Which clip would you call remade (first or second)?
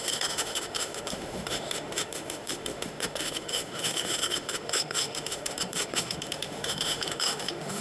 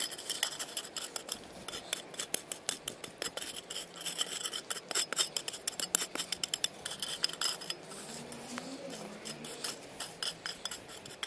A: first